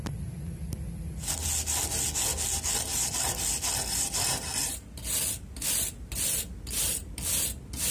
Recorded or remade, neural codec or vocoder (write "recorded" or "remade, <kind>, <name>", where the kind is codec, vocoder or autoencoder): recorded